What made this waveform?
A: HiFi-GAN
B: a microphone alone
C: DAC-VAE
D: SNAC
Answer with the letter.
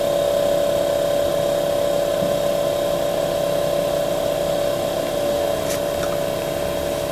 B